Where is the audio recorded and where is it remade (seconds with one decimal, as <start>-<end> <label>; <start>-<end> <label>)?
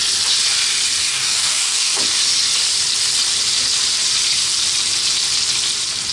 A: 0.0-1.0 recorded; 1.0-2.0 remade; 2.0-6.1 recorded